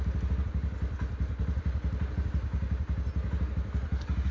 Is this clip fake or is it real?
real